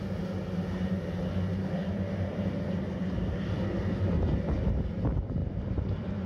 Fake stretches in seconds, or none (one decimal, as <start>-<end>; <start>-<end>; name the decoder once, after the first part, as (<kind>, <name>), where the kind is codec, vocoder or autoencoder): 2.3-3.8 (vocoder, BigVGAN v2); 5.4-6.3